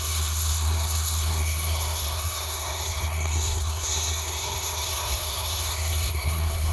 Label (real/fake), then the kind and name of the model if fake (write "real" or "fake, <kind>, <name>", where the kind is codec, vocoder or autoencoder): fake, codec, SNAC